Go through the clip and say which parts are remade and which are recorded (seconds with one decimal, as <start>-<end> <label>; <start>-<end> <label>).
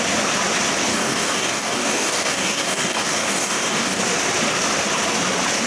0.0-0.9 recorded; 0.9-4.0 remade; 4.0-5.7 recorded